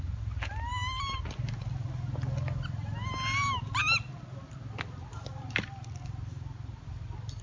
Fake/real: real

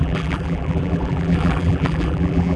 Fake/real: fake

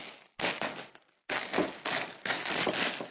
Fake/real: real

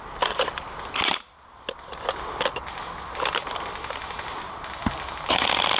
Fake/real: real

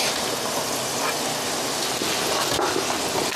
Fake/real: real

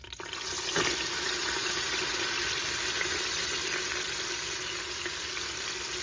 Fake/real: real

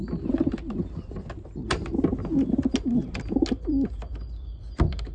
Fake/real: real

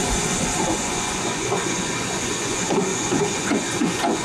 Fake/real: fake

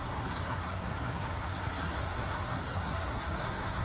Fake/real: fake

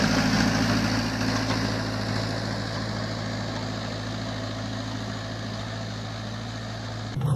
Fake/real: real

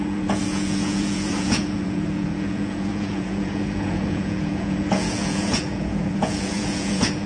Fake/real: fake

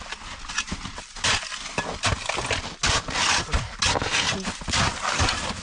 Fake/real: real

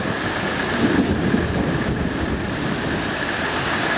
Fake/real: real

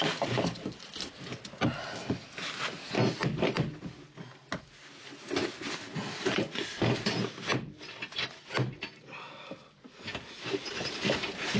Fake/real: real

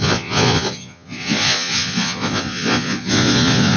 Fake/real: fake